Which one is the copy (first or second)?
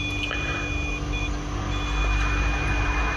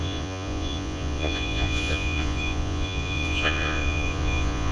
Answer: second